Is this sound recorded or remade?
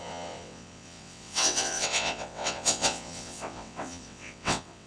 remade